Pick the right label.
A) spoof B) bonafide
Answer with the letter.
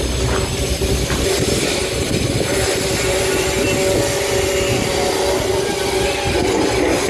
B